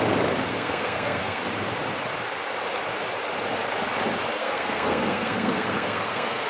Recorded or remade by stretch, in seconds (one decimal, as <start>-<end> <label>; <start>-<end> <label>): 0.0-0.5 recorded; 0.5-1.4 remade; 1.4-4.4 recorded; 4.4-6.5 remade